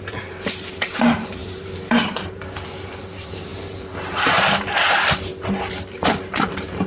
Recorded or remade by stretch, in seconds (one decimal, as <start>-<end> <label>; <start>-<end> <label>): 0.0-5.3 remade; 5.3-5.9 recorded; 5.9-6.9 remade